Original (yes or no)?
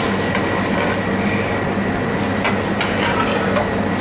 yes